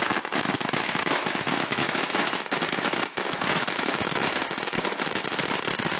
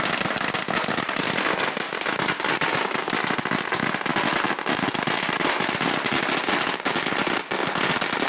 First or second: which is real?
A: second